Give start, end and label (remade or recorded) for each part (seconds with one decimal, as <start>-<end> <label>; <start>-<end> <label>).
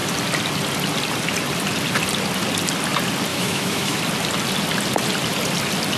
0.0-3.3 recorded; 3.3-4.0 remade; 4.0-6.0 recorded